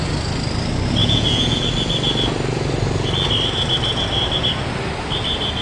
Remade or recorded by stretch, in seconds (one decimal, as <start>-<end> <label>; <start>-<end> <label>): 0.0-1.0 recorded; 1.0-1.6 remade; 1.6-5.6 recorded